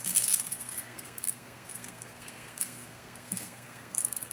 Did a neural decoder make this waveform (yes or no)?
yes